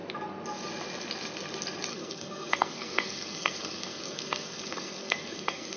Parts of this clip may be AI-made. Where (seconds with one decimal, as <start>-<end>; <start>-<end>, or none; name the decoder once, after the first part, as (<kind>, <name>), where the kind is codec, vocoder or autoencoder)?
1.9-5.8 (codec, SNAC)